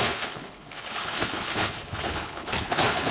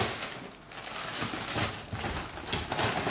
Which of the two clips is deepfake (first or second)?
first